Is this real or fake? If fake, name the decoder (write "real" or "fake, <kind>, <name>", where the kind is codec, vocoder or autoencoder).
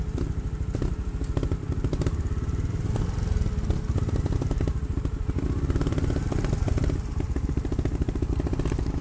fake, vocoder, BigVGAN v2